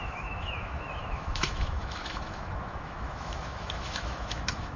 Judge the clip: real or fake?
fake